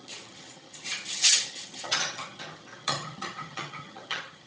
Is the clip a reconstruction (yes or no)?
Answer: yes